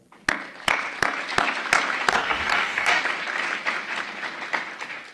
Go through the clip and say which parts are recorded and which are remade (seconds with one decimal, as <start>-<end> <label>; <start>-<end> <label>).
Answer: 0.0-2.1 recorded; 2.1-3.0 remade; 3.0-5.1 recorded